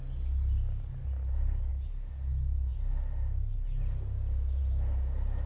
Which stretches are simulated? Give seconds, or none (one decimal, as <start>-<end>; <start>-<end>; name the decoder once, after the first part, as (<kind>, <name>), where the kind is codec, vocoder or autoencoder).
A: none